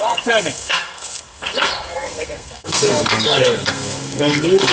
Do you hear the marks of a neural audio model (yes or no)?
yes